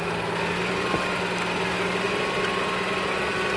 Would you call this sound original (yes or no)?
yes